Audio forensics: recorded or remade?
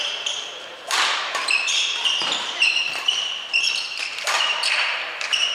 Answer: remade